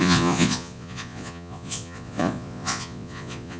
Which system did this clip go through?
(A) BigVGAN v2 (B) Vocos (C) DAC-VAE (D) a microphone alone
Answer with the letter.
B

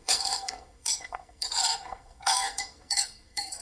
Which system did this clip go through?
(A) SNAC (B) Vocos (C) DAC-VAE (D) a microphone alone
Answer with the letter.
A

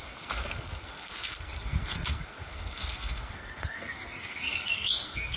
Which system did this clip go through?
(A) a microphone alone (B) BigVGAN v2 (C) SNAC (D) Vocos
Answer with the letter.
C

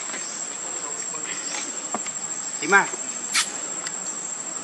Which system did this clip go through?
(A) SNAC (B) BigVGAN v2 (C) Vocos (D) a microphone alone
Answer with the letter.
D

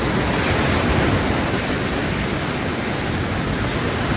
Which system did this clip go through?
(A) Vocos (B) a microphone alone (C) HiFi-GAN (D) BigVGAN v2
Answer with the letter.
B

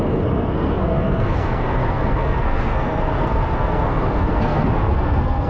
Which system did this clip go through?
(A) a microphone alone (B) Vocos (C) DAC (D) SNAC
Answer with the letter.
D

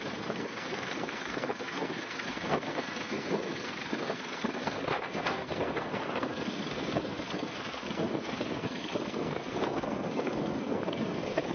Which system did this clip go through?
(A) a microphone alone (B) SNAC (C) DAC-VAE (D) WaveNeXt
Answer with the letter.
B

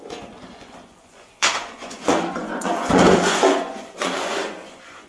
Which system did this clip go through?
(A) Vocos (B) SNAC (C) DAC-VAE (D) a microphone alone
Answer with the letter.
A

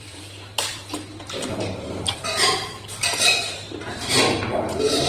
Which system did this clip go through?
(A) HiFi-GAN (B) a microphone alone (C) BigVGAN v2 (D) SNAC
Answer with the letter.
C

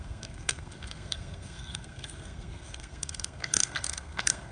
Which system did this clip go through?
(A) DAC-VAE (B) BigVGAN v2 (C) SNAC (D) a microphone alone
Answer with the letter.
C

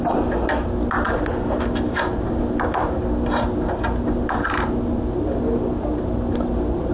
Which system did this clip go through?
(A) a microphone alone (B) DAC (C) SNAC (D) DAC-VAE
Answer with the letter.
A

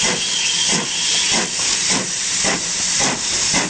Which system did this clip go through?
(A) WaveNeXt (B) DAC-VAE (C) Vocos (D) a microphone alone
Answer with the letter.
D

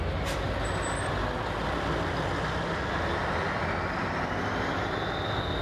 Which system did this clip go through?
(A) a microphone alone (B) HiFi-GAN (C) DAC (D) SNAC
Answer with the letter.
A